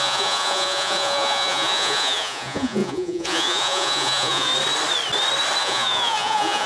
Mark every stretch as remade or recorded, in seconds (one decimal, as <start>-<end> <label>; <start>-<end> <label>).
0.0-4.5 remade; 4.5-5.6 recorded; 5.6-6.7 remade